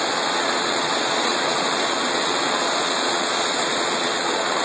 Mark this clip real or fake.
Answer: fake